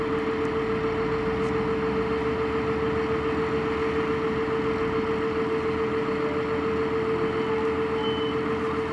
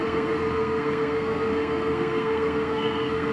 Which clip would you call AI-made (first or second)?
second